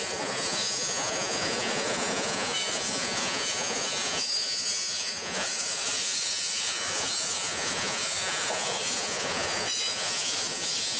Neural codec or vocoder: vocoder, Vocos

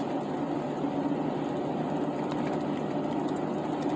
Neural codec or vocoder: none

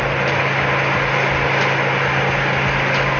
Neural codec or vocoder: none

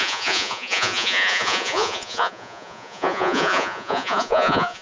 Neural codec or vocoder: vocoder, Vocos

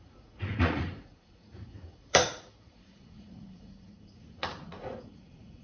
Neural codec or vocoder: vocoder, Vocos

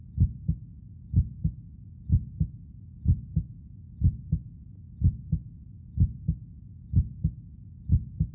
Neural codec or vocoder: none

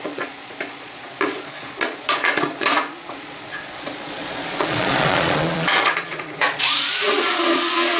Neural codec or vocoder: vocoder, Vocos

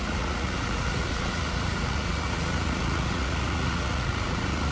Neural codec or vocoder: vocoder, Vocos